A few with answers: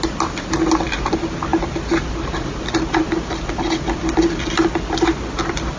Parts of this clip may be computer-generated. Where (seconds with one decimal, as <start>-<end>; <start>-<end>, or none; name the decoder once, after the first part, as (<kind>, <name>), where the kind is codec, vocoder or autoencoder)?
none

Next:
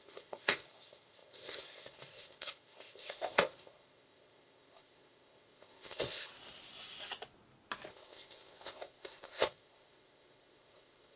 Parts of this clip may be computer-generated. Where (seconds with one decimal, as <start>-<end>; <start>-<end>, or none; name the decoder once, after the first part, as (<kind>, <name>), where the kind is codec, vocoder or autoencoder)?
0.0-6.3 (codec, ZipCodec); 7.9-11.2

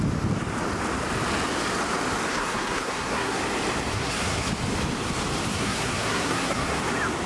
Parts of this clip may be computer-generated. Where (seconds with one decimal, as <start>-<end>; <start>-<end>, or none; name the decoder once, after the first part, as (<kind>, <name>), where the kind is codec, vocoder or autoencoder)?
2.3-3.4 (codec, SNAC); 3.9-4.5; 5.5-6.8

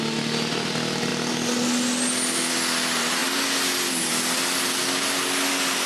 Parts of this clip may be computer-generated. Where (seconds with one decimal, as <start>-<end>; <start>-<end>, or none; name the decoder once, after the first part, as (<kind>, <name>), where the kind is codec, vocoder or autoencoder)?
none

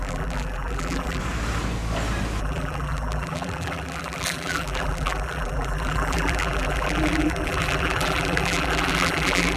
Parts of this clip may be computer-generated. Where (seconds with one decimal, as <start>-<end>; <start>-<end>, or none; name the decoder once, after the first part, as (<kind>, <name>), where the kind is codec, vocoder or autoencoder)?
0.0-1.2 (vocoder, BigVGAN v2); 2.4-9.6

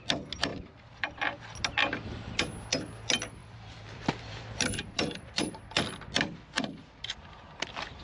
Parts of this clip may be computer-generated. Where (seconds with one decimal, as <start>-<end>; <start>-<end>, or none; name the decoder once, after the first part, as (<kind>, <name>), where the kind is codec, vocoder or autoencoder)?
0.5-1.4 (vocoder, BigVGAN v2); 3.4-5.5

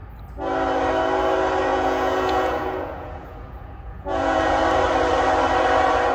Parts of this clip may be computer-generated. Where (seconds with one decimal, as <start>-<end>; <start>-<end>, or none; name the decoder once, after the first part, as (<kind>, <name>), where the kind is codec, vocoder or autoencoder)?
1.7-4.6 (vocoder, Vocos)

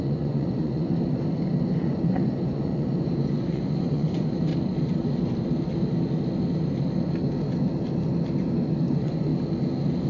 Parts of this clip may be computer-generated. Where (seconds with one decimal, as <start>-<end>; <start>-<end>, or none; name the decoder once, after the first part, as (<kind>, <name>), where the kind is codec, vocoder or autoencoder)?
0.0-0.9 (vocoder, Vocos); 1.8-4.5; 8.9-9.3